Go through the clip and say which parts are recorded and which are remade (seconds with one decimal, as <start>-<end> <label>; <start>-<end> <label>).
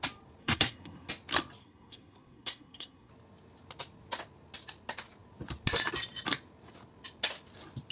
0.0-0.4 recorded; 0.4-1.1 remade; 1.1-1.6 recorded; 1.6-3.1 remade; 3.1-7.9 recorded